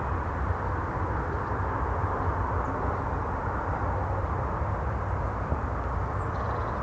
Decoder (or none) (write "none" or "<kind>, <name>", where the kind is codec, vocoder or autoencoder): none